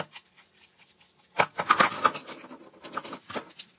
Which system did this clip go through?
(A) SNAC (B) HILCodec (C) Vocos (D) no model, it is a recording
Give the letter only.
D